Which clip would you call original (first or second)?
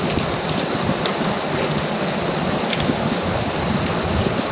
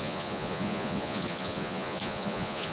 first